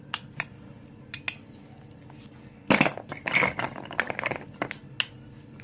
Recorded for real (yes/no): yes